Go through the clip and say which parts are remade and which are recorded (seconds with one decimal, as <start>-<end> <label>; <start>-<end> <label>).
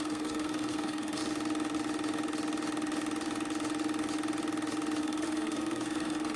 0.0-1.2 remade; 1.2-5.0 recorded; 5.0-6.4 remade